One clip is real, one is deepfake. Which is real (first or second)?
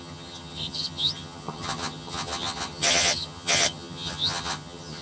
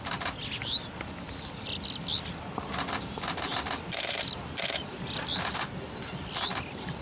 second